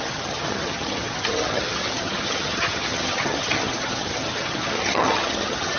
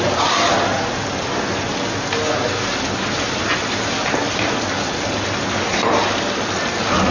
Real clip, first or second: second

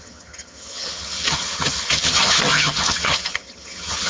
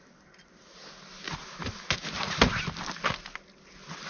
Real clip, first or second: second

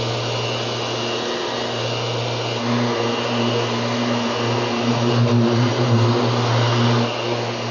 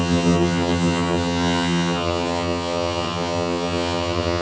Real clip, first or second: first